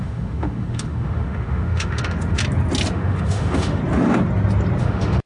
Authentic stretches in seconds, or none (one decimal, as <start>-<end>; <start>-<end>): 2.4-2.9; 3.8-4.8